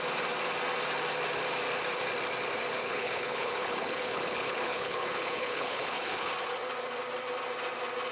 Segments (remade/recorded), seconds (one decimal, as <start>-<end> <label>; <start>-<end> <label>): 0.0-2.8 recorded; 2.8-6.3 remade; 6.3-8.1 recorded

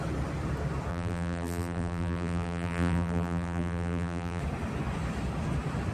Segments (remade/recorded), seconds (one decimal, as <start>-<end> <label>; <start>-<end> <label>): 0.0-0.9 recorded; 0.9-4.4 remade; 4.4-5.9 recorded

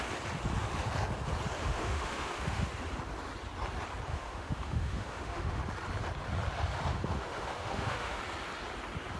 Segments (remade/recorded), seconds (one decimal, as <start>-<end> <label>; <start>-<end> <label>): 0.0-1.6 recorded; 1.6-2.7 remade; 2.7-4.1 recorded; 4.1-5.6 remade; 5.6-6.9 recorded; 6.9-8.2 remade; 8.2-9.2 recorded

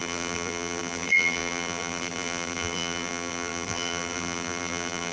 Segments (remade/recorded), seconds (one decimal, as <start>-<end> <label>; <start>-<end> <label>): 0.0-5.1 remade

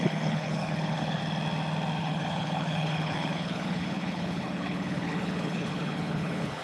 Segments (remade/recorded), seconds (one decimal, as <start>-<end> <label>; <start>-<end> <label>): 0.0-1.2 remade; 1.2-2.0 recorded; 2.0-6.6 remade

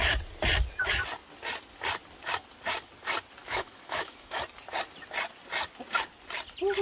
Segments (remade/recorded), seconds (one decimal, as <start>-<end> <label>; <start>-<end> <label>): 0.0-3.4 recorded; 3.4-4.4 remade; 4.4-6.8 recorded